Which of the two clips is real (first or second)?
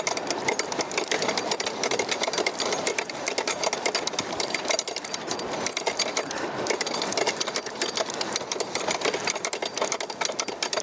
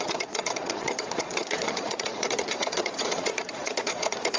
first